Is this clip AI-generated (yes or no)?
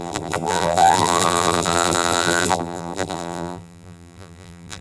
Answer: yes